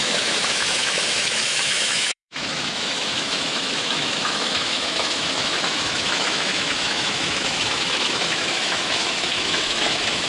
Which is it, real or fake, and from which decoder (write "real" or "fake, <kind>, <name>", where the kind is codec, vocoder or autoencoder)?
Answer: fake, autoencoder, DAC-VAE